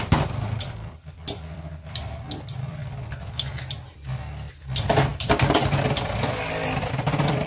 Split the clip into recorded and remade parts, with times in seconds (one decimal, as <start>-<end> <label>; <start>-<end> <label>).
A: 0.0-2.8 remade; 2.8-4.5 recorded; 4.5-7.5 remade